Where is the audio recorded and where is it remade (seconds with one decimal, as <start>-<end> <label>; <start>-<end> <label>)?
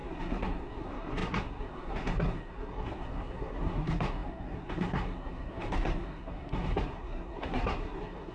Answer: 0.0-8.3 remade